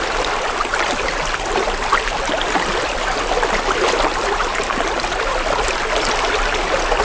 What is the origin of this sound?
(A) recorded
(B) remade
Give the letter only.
A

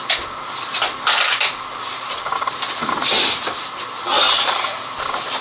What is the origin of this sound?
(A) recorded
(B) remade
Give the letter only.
A